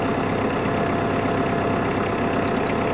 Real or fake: real